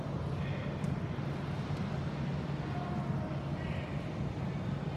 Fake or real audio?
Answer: real